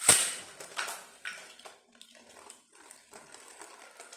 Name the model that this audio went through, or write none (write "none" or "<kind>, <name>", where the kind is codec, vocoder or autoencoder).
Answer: none